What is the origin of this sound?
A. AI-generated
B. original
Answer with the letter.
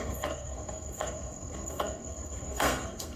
A